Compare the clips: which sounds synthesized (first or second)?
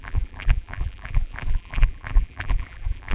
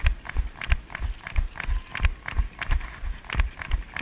first